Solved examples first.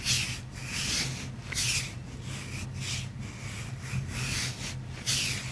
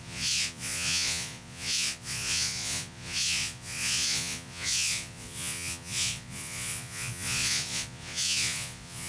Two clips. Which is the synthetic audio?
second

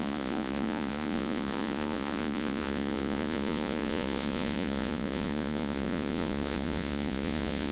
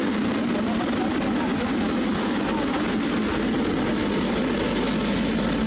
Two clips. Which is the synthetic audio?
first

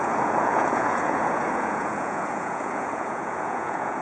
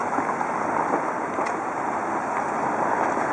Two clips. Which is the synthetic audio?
first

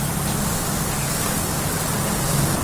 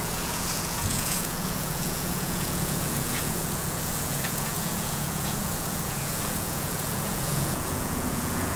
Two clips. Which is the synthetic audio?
second